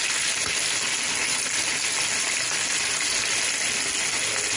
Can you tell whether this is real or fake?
real